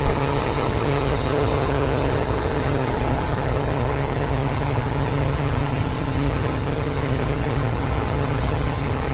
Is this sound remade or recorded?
remade